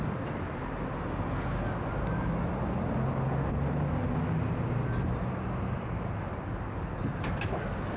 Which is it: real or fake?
real